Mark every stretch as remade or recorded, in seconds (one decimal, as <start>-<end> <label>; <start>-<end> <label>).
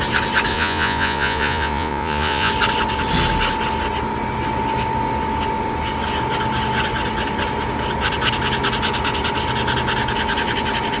0.0-0.5 recorded; 0.5-2.5 remade; 2.5-11.0 recorded